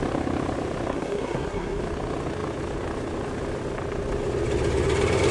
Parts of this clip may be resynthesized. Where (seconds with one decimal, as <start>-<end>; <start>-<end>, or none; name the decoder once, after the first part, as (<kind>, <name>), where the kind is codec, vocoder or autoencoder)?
0.9-1.8 (codec, SNAC)